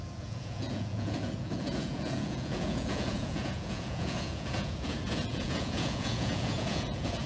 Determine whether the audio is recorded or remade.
remade